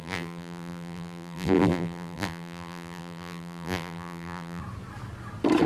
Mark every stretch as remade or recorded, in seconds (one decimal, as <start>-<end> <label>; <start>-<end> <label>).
0.0-4.6 remade; 4.6-5.7 recorded